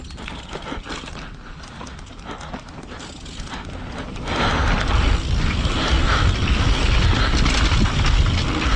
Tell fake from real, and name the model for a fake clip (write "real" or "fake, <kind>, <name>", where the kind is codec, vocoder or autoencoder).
real